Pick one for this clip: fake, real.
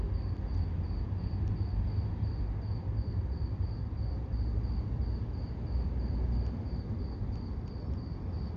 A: real